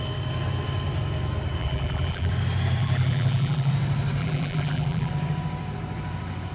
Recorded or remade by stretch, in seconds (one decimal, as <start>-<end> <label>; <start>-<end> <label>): 0.0-1.6 recorded; 1.6-2.3 remade; 2.3-2.8 recorded; 2.8-3.7 remade; 3.7-4.2 recorded; 4.2-5.1 remade; 5.1-6.5 recorded